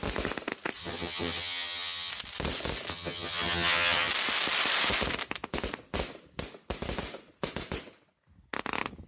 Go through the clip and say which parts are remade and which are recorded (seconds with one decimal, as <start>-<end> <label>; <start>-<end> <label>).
0.0-0.8 recorded; 0.8-2.1 remade; 2.1-2.9 recorded; 2.9-4.1 remade; 4.1-9.1 recorded